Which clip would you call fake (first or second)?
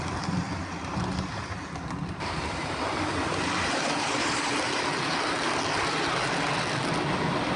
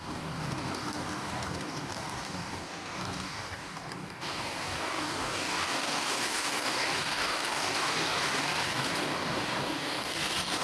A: second